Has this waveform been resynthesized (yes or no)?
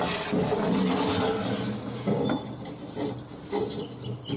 no